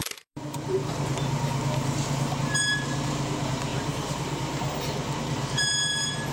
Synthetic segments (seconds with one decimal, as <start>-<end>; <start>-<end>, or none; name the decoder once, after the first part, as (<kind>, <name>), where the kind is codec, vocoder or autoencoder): 0.0-6.3 (vocoder, BigVGAN v2)